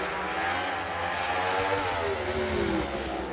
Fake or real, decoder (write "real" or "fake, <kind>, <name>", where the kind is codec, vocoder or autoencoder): real